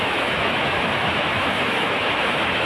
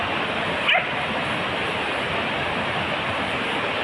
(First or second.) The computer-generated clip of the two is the first